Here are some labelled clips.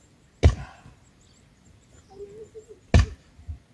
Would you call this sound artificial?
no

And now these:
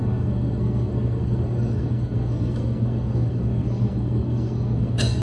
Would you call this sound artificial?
yes